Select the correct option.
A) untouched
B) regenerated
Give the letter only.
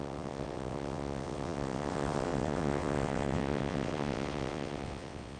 B